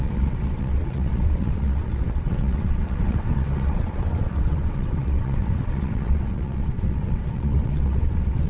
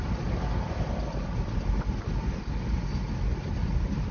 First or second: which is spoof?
first